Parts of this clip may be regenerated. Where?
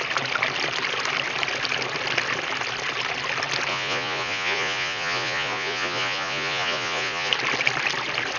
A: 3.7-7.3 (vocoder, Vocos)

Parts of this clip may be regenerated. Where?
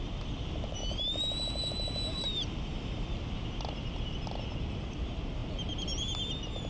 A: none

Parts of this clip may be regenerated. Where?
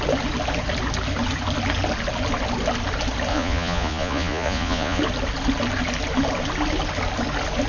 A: 3.3-5.0 (vocoder, Vocos)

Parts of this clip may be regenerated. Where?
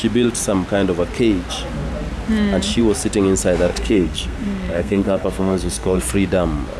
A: 3.7-6.0 (codec, SNAC)